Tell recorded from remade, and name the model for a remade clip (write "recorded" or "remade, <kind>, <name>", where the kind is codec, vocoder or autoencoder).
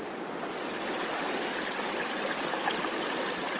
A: recorded